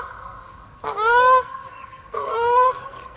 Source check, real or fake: fake